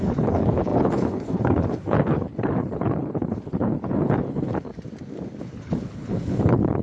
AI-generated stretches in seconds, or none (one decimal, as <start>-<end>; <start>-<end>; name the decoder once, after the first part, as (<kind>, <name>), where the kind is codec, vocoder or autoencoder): 0.0-4.7 (codec, HILCodec); 5.4-6.8